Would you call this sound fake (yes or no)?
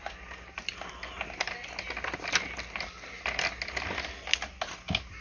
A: no